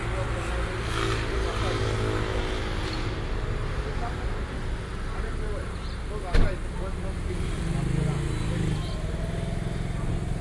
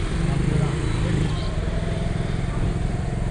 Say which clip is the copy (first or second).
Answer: second